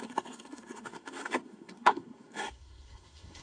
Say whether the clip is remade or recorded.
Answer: remade